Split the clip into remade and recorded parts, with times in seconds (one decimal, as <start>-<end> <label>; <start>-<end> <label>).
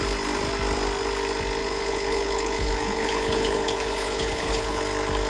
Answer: 0.0-1.6 recorded; 1.6-4.8 remade; 4.8-5.3 recorded